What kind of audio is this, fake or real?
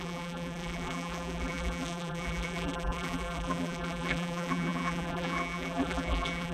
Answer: fake